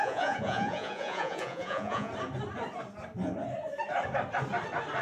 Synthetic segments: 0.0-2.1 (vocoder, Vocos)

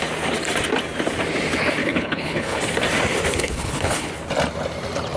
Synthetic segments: 1.8-2.6 (codec, HILCodec); 3.3-4.1

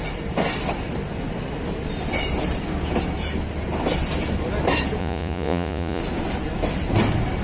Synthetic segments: 5.0-6.0 (vocoder, Vocos)

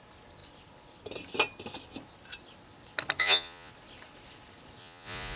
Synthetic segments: 3.2-3.7 (vocoder, Vocos); 4.8-5.4